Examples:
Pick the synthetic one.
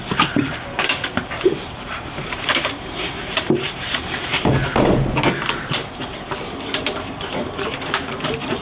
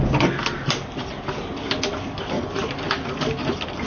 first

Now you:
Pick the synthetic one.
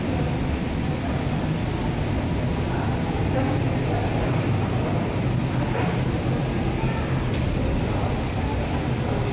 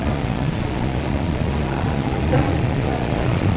second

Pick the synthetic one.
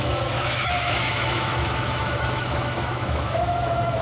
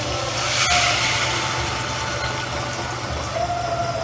first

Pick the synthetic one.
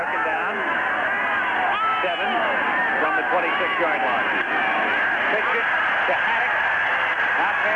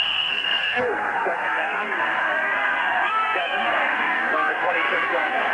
second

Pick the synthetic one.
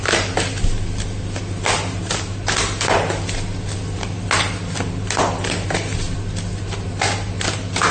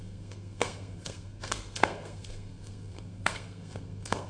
second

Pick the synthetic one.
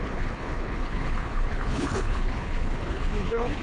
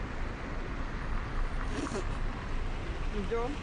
first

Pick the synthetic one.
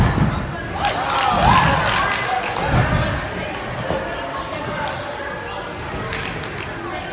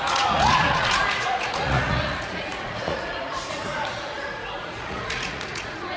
second